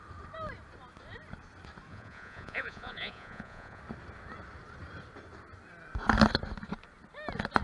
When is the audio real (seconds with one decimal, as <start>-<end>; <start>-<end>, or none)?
0.0-1.9; 3.8-7.6